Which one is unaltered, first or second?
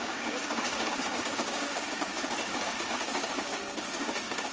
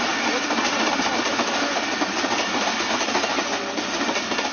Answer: second